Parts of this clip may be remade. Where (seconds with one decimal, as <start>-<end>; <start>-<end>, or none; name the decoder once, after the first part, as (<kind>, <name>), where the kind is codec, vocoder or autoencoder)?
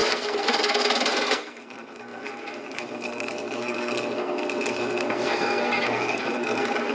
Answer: 0.0-6.9 (codec, SNAC)